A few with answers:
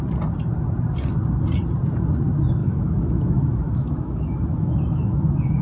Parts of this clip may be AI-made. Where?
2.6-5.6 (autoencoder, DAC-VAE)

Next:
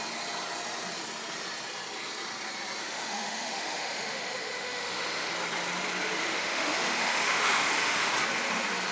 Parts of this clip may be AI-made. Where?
2.8-5.3 (autoencoder, DAC-VAE); 6.2-8.1

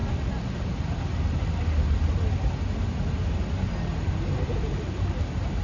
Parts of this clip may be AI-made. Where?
none

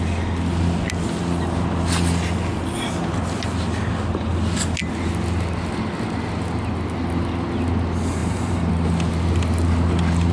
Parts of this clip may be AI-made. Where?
8.2-8.7 (vocoder, BigVGAN v2)

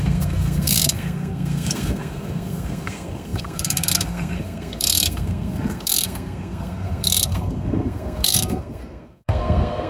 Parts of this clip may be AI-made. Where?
0.0-9.9 (codec, SNAC)

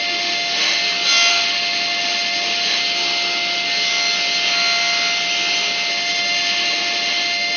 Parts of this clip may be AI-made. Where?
0.0-0.8 (autoencoder, DAC-VAE); 1.3-2.8; 5.9-7.6

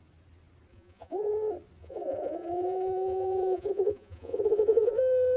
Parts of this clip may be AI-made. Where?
0.7-1.3 (vocoder, Vocos); 1.8-5.0